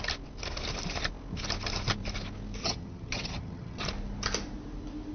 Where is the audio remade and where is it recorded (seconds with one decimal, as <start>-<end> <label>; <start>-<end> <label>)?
0.0-2.6 recorded; 2.6-3.8 remade; 3.8-5.1 recorded